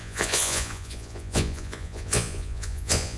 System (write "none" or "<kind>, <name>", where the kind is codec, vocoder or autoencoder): vocoder, Vocos